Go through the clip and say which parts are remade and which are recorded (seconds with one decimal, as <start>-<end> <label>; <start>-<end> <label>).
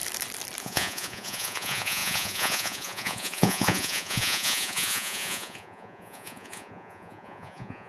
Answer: 0.0-0.6 recorded; 0.6-7.9 remade